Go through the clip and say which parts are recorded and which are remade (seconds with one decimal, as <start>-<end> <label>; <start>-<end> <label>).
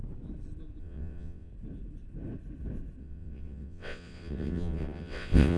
0.0-0.8 recorded; 0.8-1.5 remade; 1.5-3.0 recorded; 3.0-5.6 remade